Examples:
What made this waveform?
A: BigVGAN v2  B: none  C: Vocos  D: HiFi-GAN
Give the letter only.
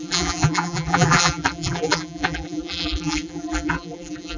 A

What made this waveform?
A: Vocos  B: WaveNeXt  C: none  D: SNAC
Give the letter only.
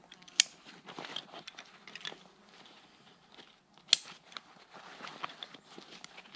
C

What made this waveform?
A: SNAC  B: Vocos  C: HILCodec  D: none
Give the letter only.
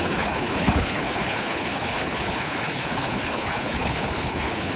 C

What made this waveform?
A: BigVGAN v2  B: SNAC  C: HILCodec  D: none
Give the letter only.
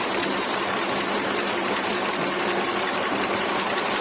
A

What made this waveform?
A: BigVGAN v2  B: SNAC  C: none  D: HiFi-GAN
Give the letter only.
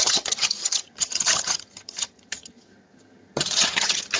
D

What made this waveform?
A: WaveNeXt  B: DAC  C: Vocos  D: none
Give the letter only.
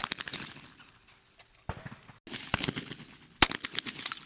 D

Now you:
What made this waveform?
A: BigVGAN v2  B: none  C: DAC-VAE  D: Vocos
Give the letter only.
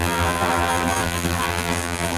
A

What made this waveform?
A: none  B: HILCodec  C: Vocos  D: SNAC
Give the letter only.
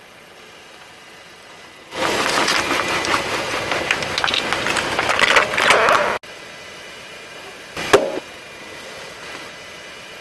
A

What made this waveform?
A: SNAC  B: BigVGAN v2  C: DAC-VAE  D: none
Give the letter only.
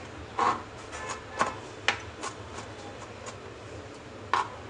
D